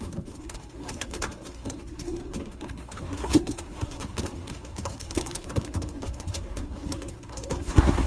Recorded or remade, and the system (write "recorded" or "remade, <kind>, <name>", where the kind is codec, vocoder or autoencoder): remade, codec, SNAC